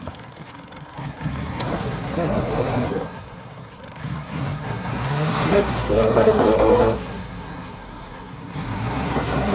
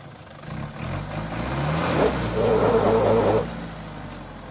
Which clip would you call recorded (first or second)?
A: second